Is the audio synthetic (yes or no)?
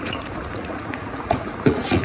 yes